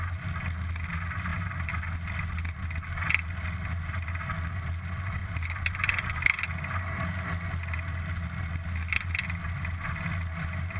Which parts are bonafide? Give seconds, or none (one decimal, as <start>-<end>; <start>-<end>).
0.0-5.2; 6.1-10.8